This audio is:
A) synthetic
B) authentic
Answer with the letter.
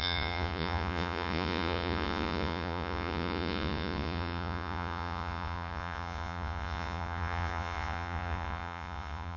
A